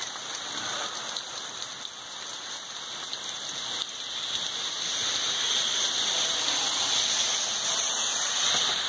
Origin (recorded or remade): recorded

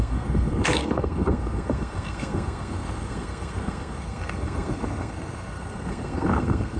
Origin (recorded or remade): remade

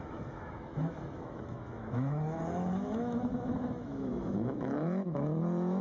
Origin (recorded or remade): remade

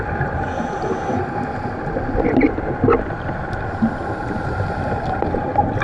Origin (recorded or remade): recorded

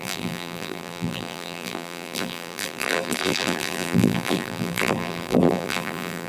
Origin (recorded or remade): remade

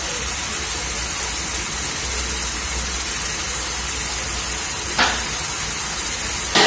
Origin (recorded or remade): recorded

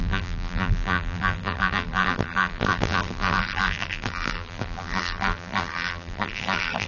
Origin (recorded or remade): remade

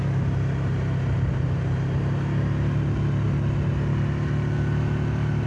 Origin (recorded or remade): recorded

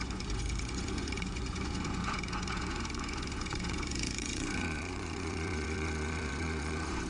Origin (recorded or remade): remade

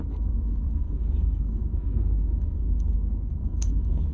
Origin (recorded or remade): remade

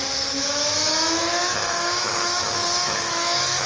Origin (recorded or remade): remade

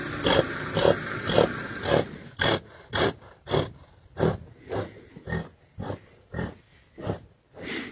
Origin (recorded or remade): recorded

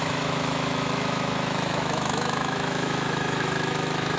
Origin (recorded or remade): remade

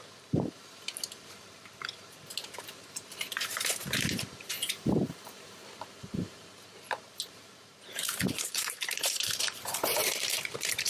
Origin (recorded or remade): remade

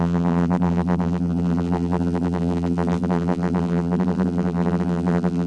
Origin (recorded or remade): remade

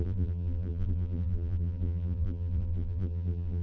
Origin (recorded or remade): remade